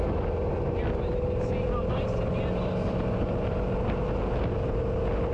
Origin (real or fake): real